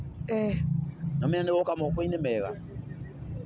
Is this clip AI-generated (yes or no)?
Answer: no